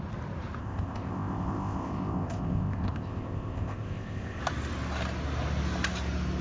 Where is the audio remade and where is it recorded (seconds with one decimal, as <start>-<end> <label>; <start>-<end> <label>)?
0.0-0.6 recorded; 0.6-4.4 remade; 4.4-6.4 recorded